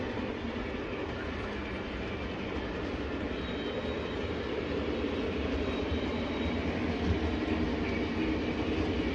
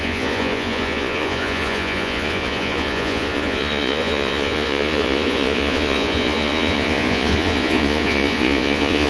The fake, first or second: second